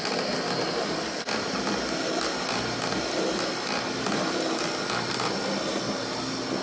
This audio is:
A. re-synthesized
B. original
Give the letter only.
B